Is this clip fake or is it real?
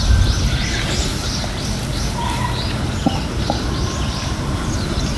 real